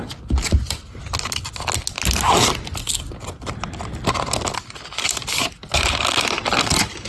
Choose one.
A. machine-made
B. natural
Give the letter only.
B